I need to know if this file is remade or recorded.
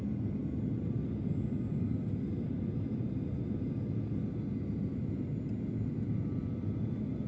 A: recorded